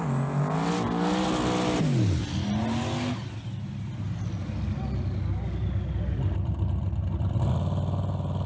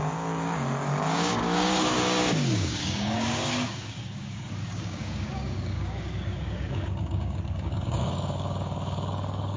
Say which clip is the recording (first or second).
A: first